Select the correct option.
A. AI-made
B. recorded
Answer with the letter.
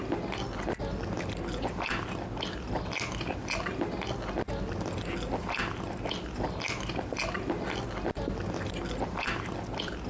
B